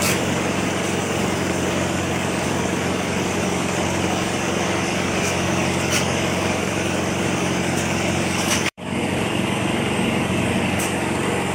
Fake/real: fake